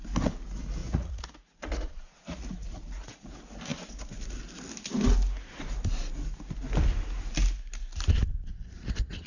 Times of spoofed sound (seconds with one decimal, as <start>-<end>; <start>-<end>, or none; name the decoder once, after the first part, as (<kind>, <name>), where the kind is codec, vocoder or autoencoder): 0.8-3.3 (vocoder, Vocos)